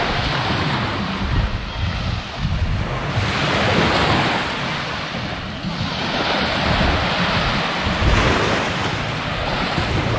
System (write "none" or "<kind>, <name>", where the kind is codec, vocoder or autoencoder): none